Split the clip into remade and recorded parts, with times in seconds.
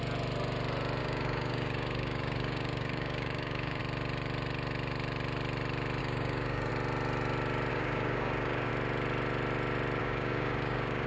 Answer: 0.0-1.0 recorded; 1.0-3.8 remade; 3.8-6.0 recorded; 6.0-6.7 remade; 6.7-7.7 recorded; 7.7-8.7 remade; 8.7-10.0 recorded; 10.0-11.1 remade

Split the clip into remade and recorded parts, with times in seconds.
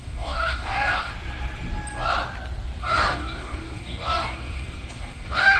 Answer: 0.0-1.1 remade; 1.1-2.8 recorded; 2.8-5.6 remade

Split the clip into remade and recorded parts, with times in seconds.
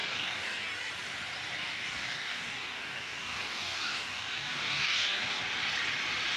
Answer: 0.0-0.9 remade; 0.9-1.6 recorded; 1.6-5.4 remade; 5.4-6.4 recorded